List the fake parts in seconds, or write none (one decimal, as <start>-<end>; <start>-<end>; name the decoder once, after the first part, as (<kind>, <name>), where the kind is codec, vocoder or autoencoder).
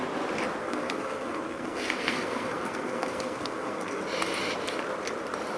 0.6-4.0 (codec, SNAC)